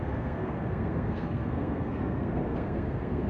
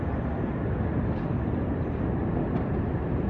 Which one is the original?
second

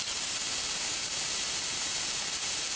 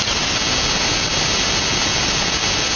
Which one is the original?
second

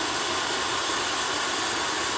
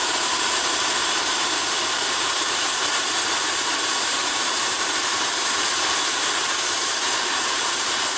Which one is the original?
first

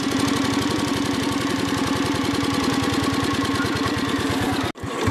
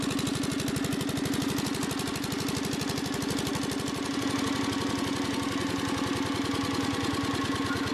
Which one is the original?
second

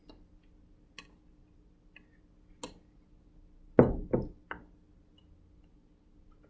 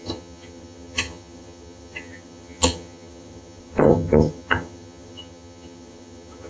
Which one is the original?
first